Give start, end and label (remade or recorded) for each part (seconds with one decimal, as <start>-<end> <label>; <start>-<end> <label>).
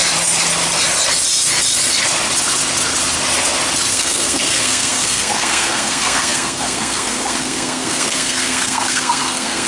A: 0.0-3.9 recorded; 3.9-9.7 remade